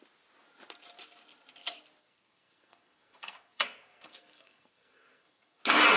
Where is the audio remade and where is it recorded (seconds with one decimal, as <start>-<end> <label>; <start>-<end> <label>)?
0.0-2.0 recorded; 2.0-5.6 remade; 5.6-6.0 recorded